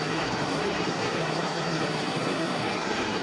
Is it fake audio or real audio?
fake